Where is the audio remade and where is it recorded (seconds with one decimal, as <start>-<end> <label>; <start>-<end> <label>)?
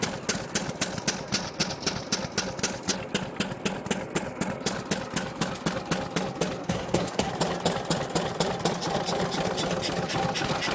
0.0-6.6 recorded; 6.6-7.3 remade; 7.3-10.7 recorded